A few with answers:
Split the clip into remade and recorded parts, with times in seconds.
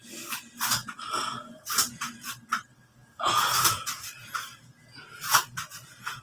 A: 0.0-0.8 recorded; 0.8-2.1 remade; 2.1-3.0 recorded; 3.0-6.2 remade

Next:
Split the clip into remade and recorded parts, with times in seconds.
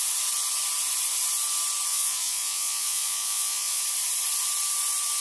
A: 0.0-1.9 recorded; 1.9-3.8 remade; 3.8-5.2 recorded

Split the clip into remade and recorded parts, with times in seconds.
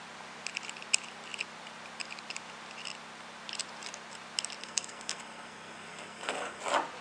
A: 0.0-4.6 recorded; 4.6-6.6 remade; 6.6-7.0 recorded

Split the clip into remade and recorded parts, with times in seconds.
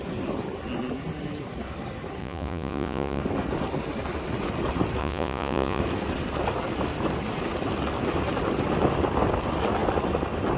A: 0.0-2.2 recorded; 2.2-3.2 remade; 3.2-5.0 recorded; 5.0-5.8 remade; 5.8-10.6 recorded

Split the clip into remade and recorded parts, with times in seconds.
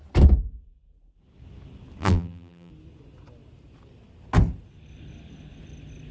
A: 0.0-2.0 recorded; 2.0-2.7 remade; 2.7-6.1 recorded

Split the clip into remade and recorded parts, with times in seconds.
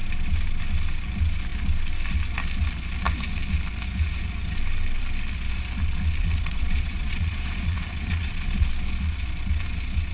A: 0.0-6.2 recorded; 6.2-8.7 remade; 8.7-10.1 recorded